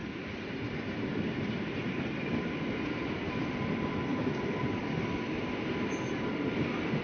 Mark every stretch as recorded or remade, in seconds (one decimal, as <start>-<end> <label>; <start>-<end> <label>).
0.0-3.6 remade; 3.6-7.0 recorded